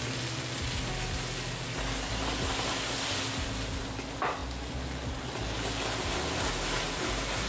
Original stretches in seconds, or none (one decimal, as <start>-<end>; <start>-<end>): 0.0-7.5